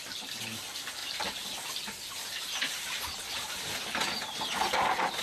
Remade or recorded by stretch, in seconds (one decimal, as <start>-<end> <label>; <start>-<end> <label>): 0.0-1.0 recorded; 1.0-3.8 remade; 3.8-5.2 recorded